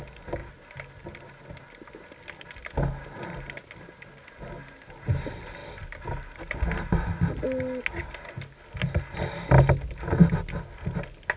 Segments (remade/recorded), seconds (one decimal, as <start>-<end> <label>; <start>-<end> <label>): 0.0-11.4 recorded